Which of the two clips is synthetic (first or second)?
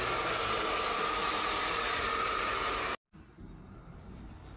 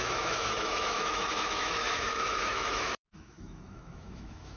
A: second